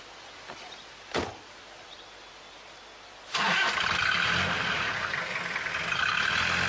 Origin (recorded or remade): recorded